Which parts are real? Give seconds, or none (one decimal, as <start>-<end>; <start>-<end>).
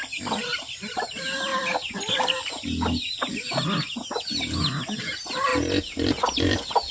0.0-6.9